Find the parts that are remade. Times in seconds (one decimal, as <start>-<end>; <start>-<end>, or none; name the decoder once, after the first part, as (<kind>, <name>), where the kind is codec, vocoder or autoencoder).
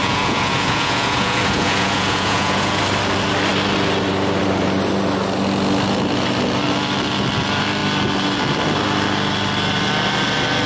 0.0-2.8 (vocoder, Vocos)